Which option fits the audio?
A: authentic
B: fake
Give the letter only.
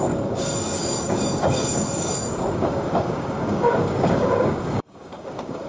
B